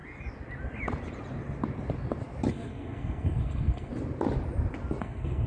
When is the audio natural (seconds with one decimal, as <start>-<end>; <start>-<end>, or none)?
0.0-2.5; 3.9-5.0